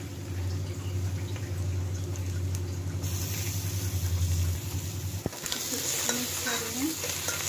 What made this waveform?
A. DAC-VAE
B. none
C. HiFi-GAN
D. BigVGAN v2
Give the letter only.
B